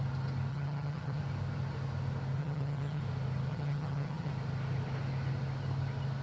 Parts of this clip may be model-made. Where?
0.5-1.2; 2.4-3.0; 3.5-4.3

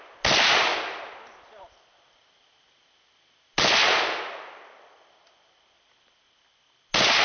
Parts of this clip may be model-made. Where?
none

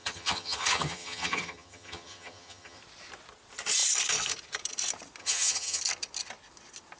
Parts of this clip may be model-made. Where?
0.0-2.8; 5.2-5.8